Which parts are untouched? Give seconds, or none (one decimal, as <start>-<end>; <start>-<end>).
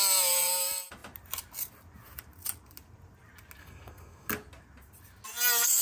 0.0-3.6; 4.3-5.8